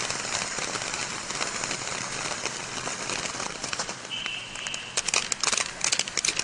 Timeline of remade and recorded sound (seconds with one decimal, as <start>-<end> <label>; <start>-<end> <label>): 0.0-6.4 recorded